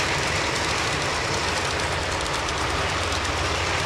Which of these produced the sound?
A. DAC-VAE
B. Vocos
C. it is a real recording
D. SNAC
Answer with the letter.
C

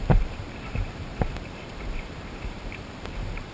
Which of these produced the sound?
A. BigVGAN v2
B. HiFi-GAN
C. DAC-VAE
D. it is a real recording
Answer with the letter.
A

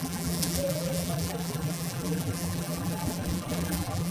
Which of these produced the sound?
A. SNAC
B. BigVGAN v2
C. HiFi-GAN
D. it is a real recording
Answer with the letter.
B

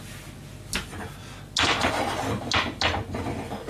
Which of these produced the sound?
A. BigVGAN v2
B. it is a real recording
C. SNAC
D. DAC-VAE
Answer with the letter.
B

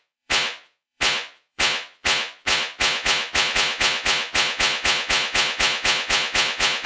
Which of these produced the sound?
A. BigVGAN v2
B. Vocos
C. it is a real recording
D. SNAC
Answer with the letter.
B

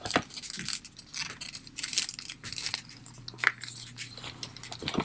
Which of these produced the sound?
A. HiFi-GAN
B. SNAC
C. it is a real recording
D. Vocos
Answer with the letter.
C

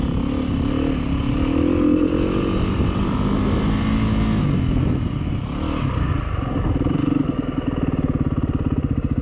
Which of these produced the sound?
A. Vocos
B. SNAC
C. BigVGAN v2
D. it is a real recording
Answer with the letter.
D